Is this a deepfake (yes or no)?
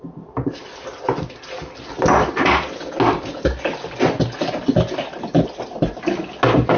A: no